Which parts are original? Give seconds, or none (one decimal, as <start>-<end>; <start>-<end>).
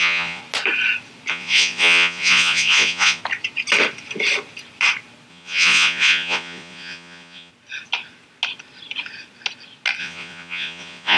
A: 0.4-1.3; 3.2-5.3; 7.5-10.0